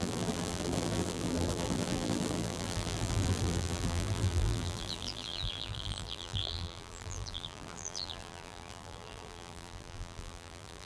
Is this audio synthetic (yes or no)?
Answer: yes